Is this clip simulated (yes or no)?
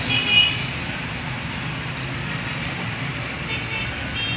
no